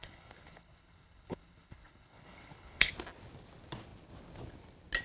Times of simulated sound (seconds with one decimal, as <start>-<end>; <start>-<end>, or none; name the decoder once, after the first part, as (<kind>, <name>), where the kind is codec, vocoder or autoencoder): 0.0-2.9 (codec, HILCodec)